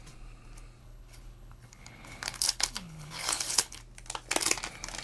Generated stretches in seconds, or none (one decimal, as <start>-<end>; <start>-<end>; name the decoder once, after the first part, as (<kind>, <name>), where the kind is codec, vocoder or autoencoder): 0.8-3.8 (codec, HILCodec)